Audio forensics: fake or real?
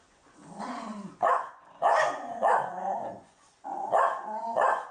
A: fake